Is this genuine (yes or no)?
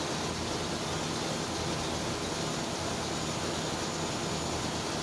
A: yes